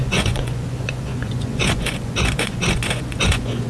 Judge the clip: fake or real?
fake